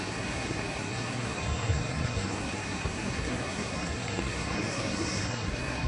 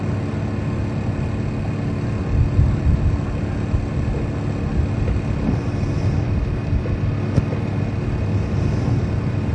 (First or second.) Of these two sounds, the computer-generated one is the first